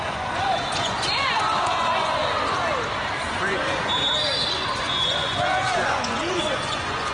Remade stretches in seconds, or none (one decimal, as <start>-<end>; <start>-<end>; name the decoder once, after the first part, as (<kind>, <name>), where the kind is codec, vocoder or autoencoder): 0.0-2.2 (vocoder, Vocos); 3.4-3.9; 4.5-7.1

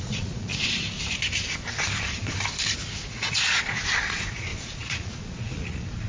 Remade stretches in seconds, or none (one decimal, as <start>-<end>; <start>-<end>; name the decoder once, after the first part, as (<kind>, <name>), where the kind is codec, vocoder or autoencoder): 0.0-0.5 (vocoder, Vocos); 3.0-6.1

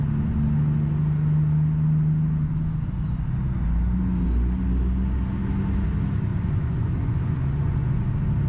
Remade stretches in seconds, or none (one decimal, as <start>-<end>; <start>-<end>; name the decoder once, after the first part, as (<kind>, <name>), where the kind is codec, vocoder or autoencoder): 6.3-8.1 (vocoder, Vocos)

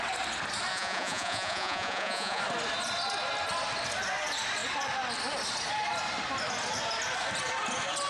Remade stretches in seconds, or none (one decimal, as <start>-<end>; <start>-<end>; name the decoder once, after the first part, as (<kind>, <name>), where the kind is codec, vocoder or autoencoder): 0.7-2.4 (vocoder, Vocos)

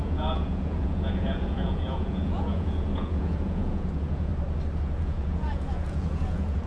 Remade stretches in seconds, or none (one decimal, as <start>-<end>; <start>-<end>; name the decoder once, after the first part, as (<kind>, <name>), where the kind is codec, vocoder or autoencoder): 0.0-4.3 (vocoder, Vocos); 4.8-6.7

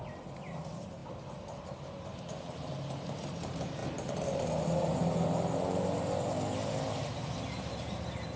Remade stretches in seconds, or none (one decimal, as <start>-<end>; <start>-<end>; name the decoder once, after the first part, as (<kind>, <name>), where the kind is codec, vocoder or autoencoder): none